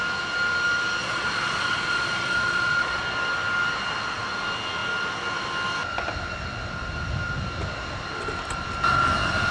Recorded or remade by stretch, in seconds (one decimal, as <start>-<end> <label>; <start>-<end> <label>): 0.0-1.0 recorded; 1.0-3.0 remade; 3.0-9.5 recorded